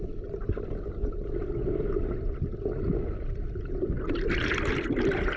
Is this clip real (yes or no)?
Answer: yes